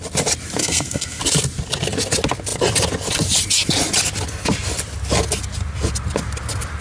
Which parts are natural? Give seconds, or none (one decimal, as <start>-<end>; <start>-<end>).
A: 0.0-0.6; 1.2-6.8

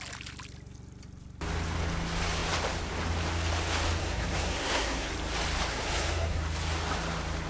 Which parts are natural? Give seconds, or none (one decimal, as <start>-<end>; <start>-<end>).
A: 0.0-4.0; 5.1-5.7; 6.4-7.5